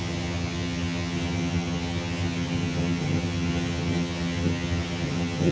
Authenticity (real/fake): fake